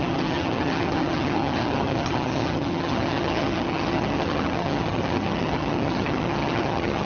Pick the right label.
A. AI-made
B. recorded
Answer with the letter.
A